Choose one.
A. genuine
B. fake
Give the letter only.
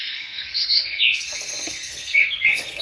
B